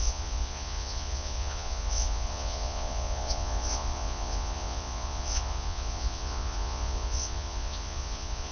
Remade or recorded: remade